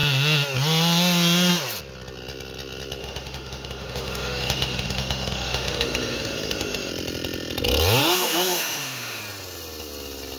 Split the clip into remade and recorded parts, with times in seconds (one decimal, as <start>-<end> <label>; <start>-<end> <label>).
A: 0.0-3.0 recorded; 3.0-6.9 remade; 6.9-8.0 recorded; 8.0-9.2 remade; 9.2-10.4 recorded